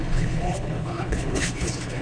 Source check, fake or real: fake